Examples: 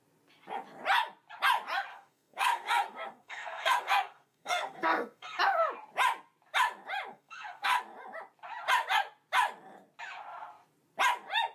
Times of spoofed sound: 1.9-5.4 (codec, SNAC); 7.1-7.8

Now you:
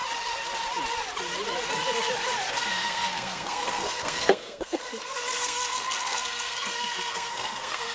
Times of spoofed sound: 2.5-7.9 (codec, SNAC)

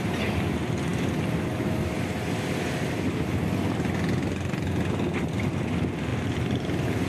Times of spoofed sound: none

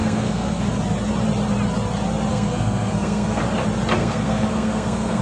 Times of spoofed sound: 0.0-0.6 (codec, SNAC); 2.3-3.4; 4.0-5.2

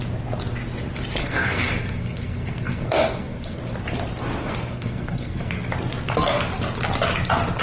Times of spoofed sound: 1.2-3.6 (codec, SNAC); 4.4-5.6

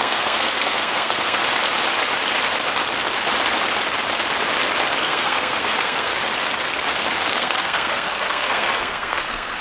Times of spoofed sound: 0.0-1.4 (codec, SNAC); 5.0-6.1; 7.3-9.6

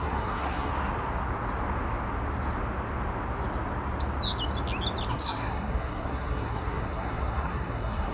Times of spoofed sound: 0.0-0.7 (codec, SNAC); 5.1-8.1

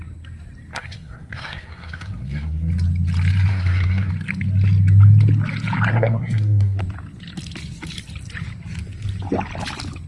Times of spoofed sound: 0.7-2.7 (codec, SNAC); 3.5-4.1; 5.9-6.8